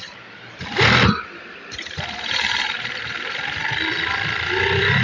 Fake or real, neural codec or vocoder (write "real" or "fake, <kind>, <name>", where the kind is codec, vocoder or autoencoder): fake, vocoder, BigVGAN v2